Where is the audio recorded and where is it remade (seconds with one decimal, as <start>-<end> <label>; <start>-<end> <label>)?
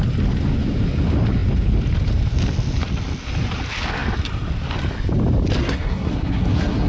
0.0-5.6 recorded; 5.6-6.9 remade